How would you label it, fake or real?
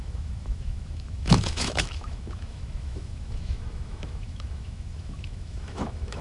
fake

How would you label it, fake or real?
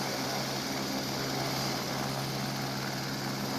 real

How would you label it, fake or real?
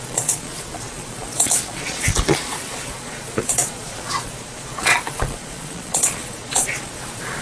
fake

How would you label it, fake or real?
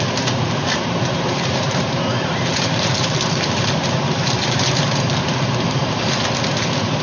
fake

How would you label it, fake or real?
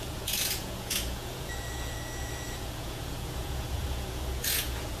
fake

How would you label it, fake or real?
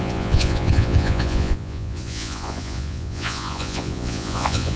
fake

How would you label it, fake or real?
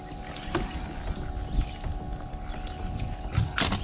real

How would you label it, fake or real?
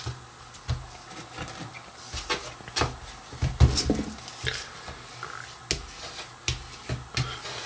real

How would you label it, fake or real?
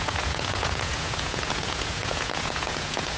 fake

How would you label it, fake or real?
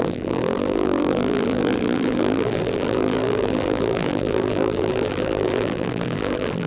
fake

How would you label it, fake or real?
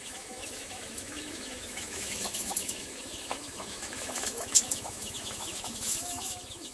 fake